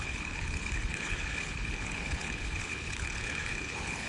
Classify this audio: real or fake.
fake